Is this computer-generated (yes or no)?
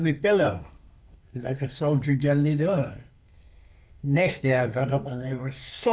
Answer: yes